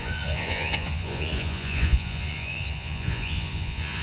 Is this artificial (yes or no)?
yes